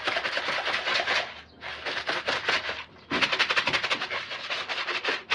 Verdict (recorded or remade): recorded